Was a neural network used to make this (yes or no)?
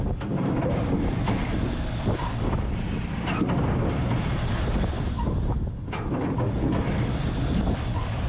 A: no